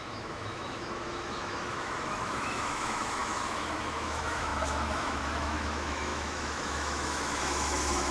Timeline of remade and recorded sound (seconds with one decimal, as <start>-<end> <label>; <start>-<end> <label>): 0.0-8.1 remade